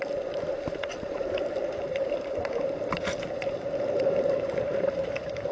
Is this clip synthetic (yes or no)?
yes